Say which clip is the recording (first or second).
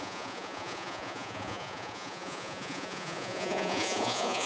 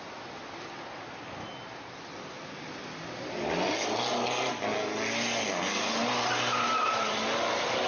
second